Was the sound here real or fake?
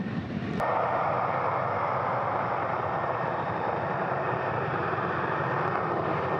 fake